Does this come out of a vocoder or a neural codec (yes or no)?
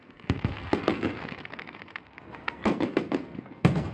yes